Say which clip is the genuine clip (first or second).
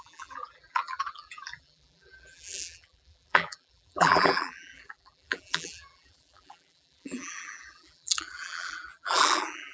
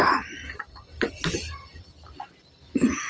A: second